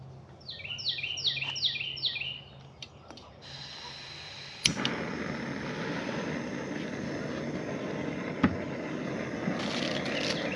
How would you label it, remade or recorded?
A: recorded